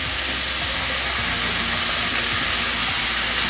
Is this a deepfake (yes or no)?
no